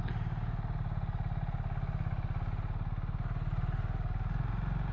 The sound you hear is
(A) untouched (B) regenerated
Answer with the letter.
A